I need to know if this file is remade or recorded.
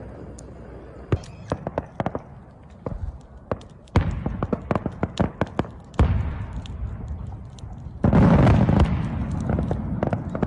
recorded